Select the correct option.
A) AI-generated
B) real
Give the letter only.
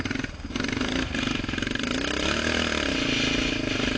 B